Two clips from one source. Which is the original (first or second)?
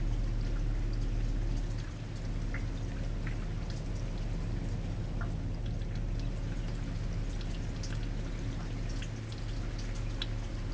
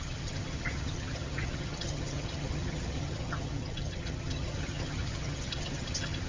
first